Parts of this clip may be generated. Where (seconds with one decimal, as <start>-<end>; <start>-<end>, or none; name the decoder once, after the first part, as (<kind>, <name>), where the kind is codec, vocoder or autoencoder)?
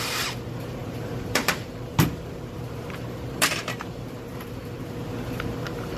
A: 0.0-4.6 (vocoder, BigVGAN v2); 5.3-6.0